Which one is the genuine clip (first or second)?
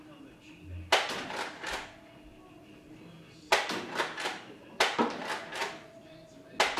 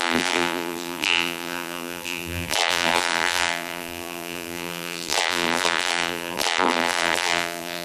first